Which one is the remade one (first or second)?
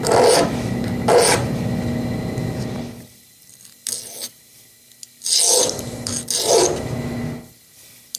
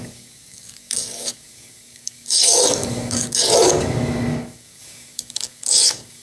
second